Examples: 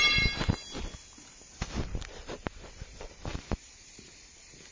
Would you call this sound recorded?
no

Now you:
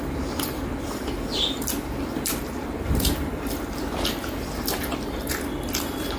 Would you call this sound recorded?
no